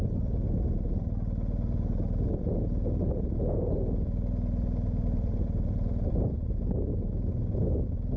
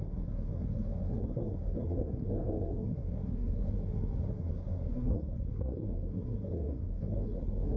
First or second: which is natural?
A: first